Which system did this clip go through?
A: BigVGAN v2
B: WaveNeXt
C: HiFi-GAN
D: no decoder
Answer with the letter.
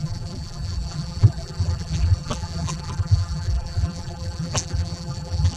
A